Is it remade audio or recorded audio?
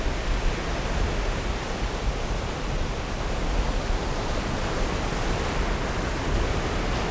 recorded